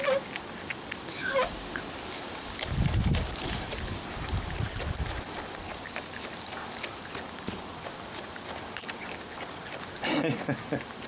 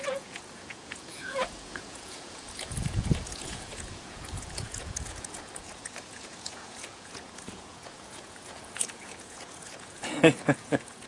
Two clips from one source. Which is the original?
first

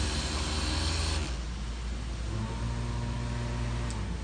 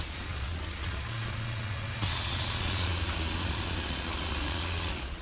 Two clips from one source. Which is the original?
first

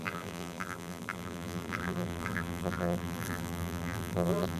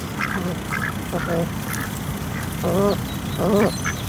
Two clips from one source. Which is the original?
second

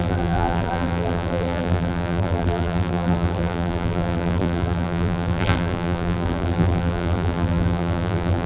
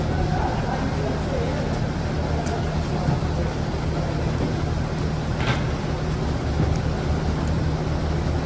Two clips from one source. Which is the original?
second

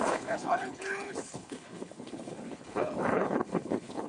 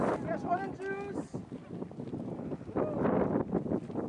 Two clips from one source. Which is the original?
second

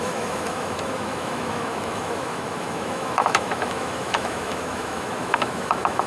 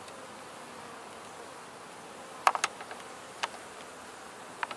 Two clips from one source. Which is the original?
second